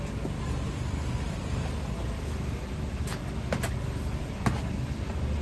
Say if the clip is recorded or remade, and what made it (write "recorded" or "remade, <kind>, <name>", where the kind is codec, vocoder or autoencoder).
recorded